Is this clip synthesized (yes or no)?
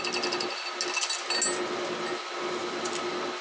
no